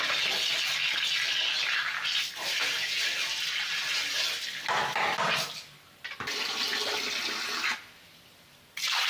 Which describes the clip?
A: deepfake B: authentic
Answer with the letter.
B